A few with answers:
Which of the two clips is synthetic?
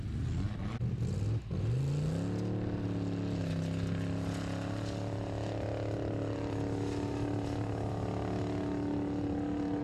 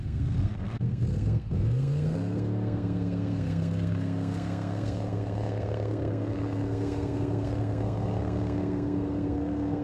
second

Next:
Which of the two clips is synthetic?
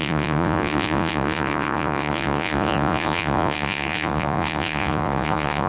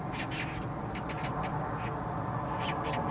first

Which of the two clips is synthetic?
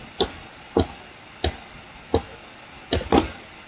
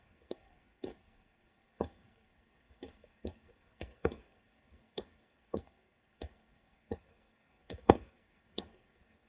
second